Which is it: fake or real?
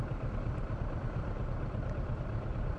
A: real